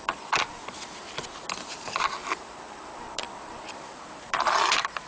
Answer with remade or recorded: recorded